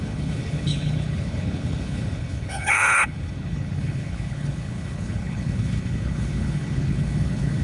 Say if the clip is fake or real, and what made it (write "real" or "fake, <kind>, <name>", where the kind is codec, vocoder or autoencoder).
fake, codec, HILCodec